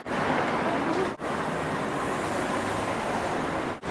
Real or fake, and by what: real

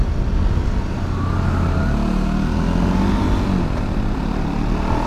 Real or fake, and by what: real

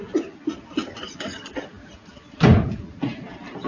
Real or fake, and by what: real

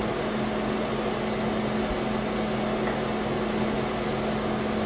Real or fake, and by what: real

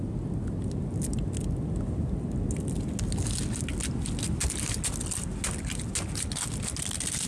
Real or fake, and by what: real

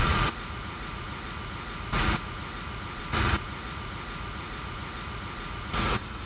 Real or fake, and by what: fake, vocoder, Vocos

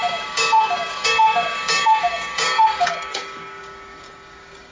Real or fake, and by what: fake, codec, DAC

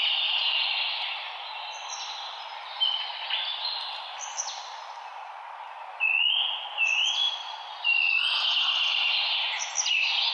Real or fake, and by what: real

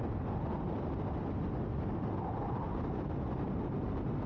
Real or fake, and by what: real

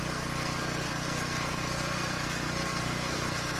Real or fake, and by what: fake, codec, SNAC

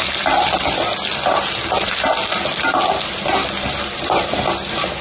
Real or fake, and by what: real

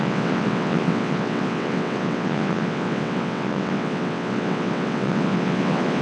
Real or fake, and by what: fake, vocoder, WaveNeXt